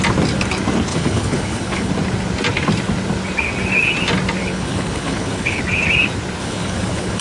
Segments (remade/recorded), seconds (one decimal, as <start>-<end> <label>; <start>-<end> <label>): 0.0-0.9 recorded; 0.9-1.9 remade; 1.9-4.4 recorded; 4.4-5.6 remade; 5.6-6.4 recorded; 6.4-7.2 remade